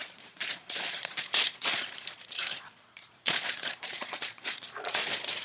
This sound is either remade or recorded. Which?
remade